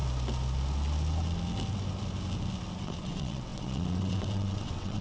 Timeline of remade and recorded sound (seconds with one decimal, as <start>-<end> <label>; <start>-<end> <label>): 0.0-2.8 recorded; 2.8-5.0 remade